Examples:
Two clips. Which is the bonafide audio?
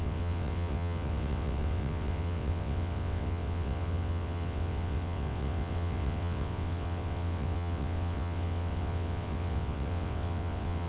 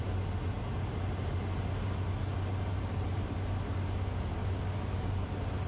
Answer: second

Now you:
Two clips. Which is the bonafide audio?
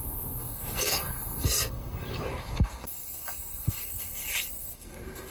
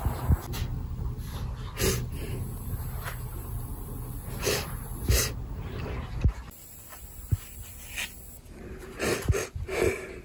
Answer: second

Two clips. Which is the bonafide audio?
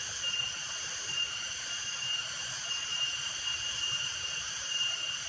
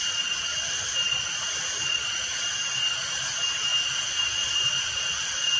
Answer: second